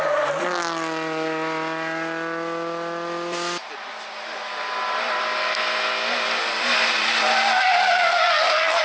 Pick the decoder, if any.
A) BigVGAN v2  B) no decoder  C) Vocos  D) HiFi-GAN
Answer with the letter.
B